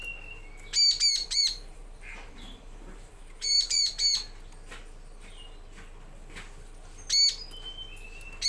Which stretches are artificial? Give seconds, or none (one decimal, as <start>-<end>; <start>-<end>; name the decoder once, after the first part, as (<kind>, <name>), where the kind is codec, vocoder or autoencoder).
1.2-3.9 (vocoder, BigVGAN v2)